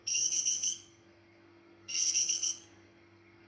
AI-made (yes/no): yes